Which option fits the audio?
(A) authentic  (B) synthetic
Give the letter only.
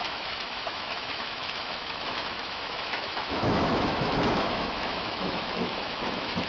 B